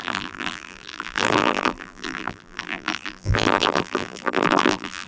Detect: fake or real fake